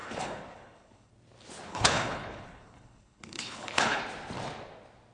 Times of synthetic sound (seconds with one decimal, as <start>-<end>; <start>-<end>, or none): 0.0-1.1; 1.7-4.0

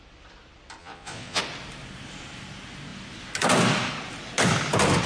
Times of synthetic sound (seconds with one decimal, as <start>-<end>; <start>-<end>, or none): 0.8-1.4

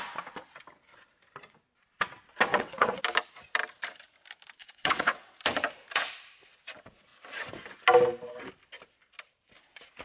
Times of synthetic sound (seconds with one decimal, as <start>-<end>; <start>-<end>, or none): 2.5-3.0; 4.6-5.4

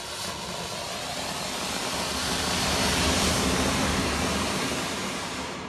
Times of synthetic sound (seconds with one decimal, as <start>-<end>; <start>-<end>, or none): 2.2-5.7

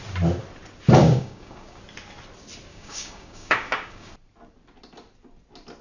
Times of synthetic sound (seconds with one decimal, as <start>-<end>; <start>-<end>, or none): 1.0-1.8; 2.7-4.1

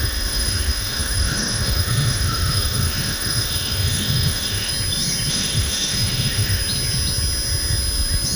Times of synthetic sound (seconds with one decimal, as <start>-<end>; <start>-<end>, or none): 0.0-4.7; 5.3-6.6

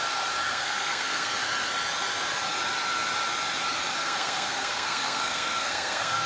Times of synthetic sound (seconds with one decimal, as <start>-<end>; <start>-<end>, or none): 0.5-1.3; 4.0-6.3